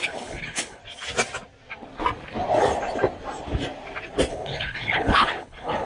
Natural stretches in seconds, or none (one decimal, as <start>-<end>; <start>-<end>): 0.8-4.3